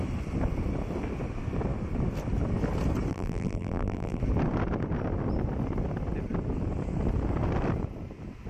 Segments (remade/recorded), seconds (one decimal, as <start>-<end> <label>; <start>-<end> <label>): 0.0-3.1 recorded; 3.1-4.2 remade; 4.2-8.5 recorded